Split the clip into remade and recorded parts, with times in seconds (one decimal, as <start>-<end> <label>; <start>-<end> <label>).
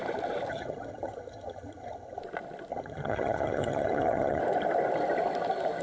0.0-0.5 recorded; 0.5-2.2 remade; 2.2-2.7 recorded; 2.7-4.4 remade; 4.4-5.8 recorded